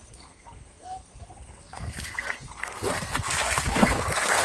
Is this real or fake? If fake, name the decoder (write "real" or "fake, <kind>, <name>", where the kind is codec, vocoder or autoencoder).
fake, codec, SNAC